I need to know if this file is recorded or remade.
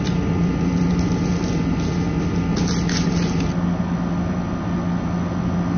recorded